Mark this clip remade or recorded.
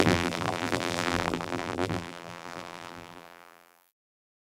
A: remade